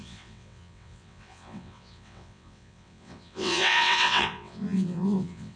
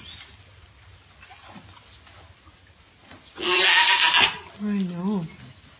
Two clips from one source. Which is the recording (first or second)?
second